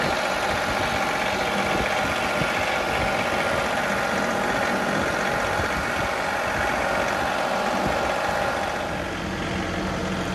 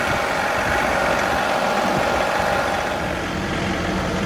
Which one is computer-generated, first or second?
second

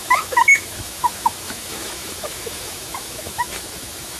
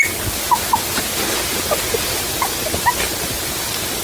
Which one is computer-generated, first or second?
first